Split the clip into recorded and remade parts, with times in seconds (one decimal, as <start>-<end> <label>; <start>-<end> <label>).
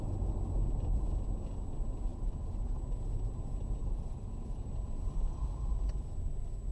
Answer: 0.0-2.1 recorded; 2.1-2.8 remade; 2.8-3.8 recorded; 3.8-4.7 remade; 4.7-6.7 recorded